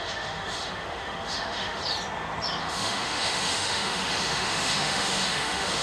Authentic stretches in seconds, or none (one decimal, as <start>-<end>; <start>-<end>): 1.8-2.6